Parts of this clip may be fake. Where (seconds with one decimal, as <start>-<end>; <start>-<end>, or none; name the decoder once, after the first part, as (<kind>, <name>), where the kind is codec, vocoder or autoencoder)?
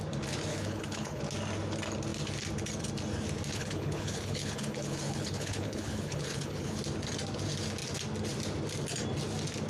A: 0.5-1.2 (codec, HILCodec); 3.5-6.8